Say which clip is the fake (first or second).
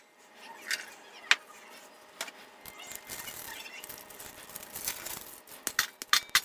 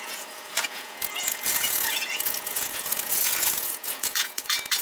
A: second